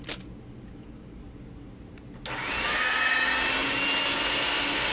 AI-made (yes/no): no